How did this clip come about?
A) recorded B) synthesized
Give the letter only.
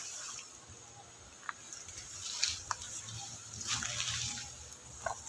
A